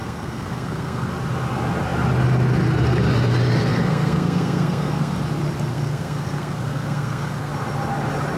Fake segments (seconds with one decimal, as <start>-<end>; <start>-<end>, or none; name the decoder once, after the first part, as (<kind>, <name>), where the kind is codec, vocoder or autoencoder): 0.0-1.1 (codec, SNAC); 3.7-5.1; 5.7-7.5